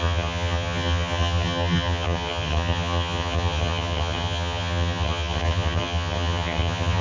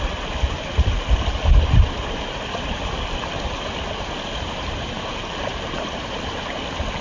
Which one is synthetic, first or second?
first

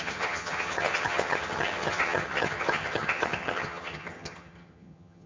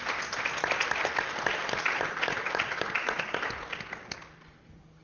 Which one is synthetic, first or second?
first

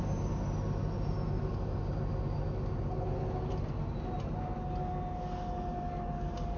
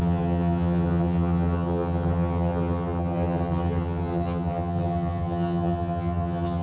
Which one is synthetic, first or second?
second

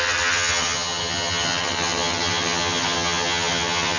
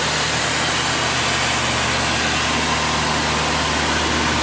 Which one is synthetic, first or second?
first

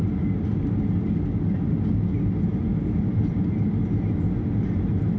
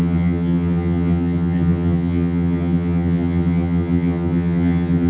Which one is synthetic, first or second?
second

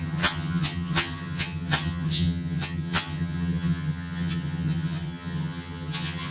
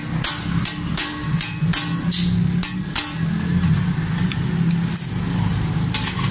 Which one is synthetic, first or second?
first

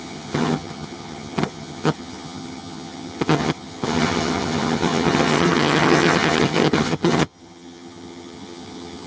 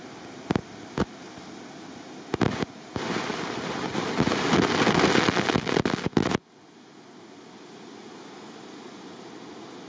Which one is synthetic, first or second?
first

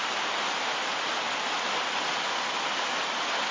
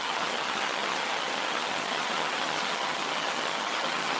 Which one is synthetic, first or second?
second